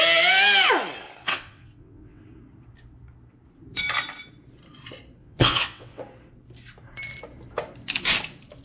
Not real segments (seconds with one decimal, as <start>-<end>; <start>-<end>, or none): 1.2-2.2; 5.2-6.0